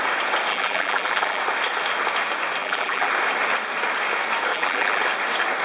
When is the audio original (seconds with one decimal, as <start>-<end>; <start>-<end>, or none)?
0.0-0.5; 1.4-2.6; 3.1-4.5; 5.0-5.6